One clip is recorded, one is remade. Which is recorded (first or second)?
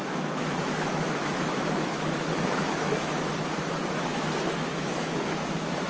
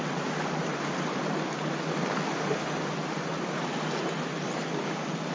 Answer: second